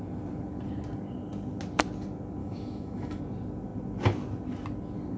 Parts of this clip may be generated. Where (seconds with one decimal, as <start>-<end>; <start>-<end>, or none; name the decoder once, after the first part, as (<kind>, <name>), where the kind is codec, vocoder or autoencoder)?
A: 2.4-3.2 (autoencoder, DAC-VAE)